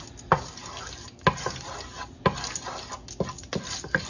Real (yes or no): yes